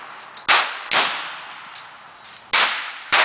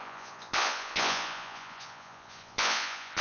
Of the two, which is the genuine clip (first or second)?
first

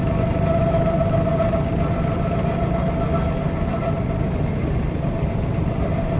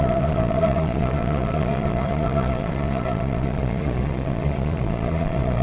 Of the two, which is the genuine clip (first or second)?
first